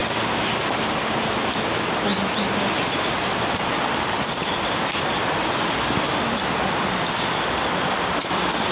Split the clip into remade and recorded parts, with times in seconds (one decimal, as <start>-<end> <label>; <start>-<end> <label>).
0.0-8.7 recorded

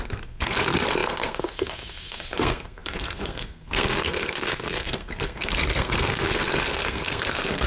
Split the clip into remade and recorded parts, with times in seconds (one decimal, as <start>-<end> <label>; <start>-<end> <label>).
0.0-7.7 remade

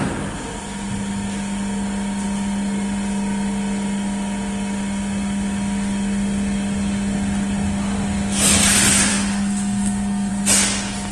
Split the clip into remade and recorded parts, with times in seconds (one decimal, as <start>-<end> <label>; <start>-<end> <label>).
0.0-9.1 recorded; 9.1-10.3 remade; 10.3-11.1 recorded